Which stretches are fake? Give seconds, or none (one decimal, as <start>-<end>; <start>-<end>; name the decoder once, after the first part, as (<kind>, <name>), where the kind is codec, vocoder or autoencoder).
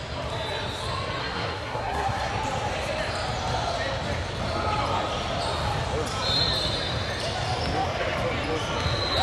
1.2-2.3 (codec, SNAC)